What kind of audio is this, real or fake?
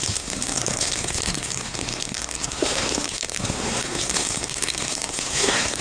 fake